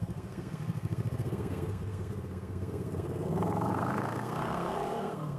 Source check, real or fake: fake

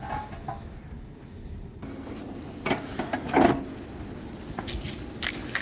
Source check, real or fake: real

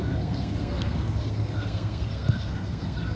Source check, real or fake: fake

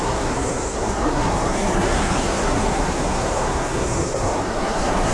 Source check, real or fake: fake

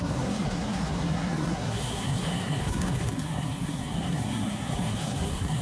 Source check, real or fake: fake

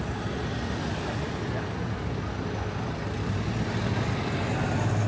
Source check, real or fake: real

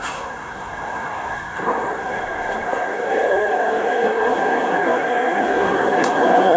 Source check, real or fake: fake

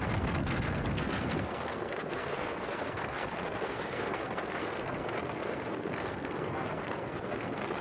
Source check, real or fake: fake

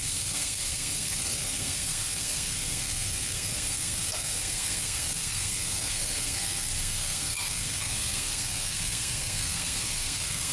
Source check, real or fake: fake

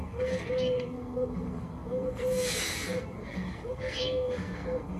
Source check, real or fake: fake